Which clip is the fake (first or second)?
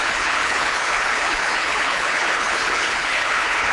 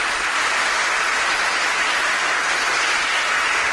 first